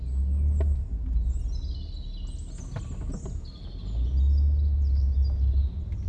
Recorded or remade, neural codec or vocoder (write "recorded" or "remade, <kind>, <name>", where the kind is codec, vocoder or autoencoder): recorded